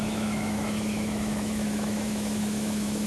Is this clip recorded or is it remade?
remade